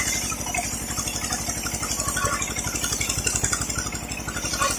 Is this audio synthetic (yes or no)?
no